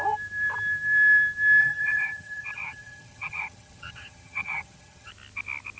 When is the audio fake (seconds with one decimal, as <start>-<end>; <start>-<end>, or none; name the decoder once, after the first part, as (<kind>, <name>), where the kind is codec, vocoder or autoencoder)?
1.6-5.1 (vocoder, HiFi-GAN)